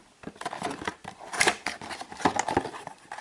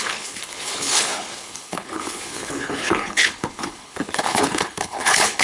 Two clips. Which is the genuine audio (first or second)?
first